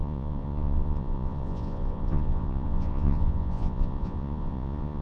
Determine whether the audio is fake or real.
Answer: fake